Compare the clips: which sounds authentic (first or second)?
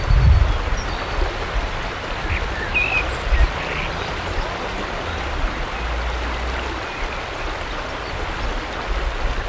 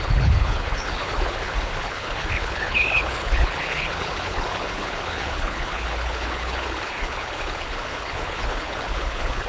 first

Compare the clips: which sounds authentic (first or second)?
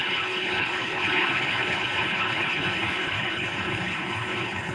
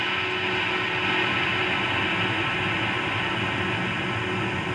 second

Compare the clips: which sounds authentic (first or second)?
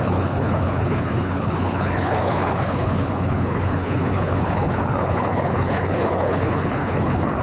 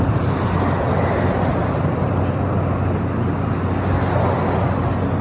second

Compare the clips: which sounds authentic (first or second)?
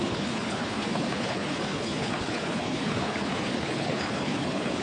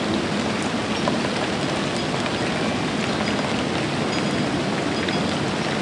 second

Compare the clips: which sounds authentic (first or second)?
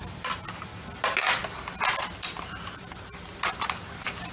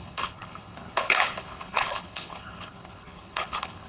first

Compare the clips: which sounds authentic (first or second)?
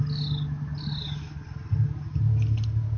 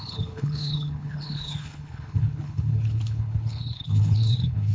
first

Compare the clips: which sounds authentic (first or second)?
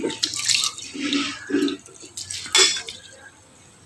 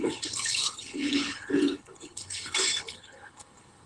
first